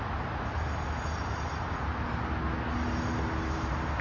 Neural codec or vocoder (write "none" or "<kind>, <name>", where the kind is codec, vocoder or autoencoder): none